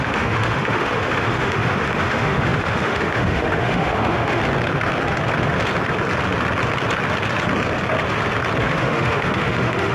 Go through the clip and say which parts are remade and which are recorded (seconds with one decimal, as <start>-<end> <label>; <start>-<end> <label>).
0.0-4.4 remade; 4.4-8.6 recorded; 8.6-9.9 remade